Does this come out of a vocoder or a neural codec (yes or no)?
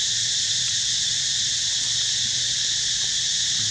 no